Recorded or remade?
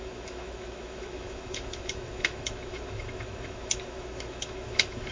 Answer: remade